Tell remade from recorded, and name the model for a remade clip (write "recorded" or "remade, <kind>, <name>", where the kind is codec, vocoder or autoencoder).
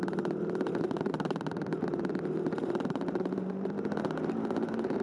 remade, vocoder, BigVGAN v2